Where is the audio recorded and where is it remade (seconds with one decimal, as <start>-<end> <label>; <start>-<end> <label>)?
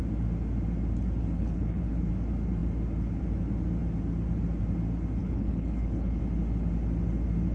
0.0-1.2 recorded; 1.2-2.1 remade; 2.1-5.2 recorded; 5.2-6.2 remade; 6.2-7.5 recorded